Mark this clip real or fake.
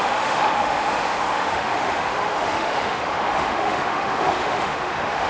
fake